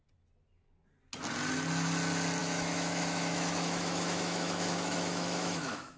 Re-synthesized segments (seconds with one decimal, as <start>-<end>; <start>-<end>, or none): 2.4-6.0